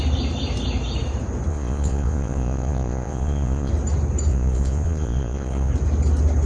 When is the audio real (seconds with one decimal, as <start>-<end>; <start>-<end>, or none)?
0.0-1.5; 3.7-4.3; 5.7-6.5